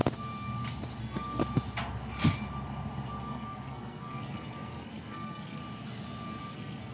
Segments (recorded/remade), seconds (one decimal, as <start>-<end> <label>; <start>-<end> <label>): 0.0-1.0 recorded; 1.0-1.4 remade; 1.4-3.2 recorded; 3.2-5.6 remade; 5.6-6.4 recorded; 6.4-6.9 remade